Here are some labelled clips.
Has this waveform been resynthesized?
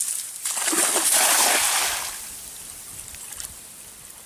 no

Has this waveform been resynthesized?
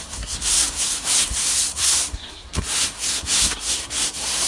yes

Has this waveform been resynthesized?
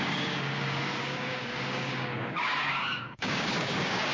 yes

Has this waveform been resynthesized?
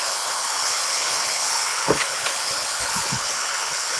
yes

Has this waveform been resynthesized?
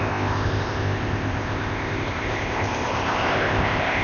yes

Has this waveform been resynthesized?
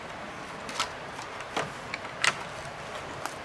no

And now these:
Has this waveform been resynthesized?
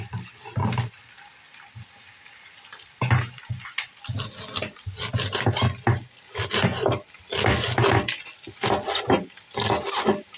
no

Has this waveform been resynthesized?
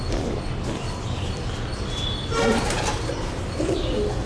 yes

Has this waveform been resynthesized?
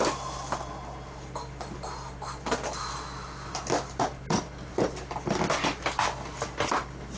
no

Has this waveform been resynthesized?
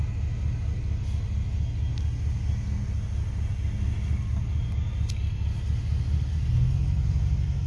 no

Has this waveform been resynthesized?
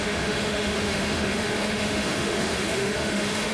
yes